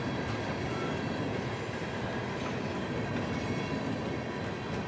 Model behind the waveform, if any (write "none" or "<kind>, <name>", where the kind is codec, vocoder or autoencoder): none